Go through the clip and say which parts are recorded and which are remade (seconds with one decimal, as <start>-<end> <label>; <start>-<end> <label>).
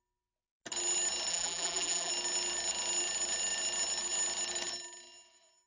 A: 0.0-1.3 recorded; 1.3-2.1 remade; 2.1-5.7 recorded